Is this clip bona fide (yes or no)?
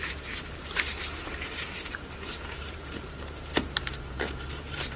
no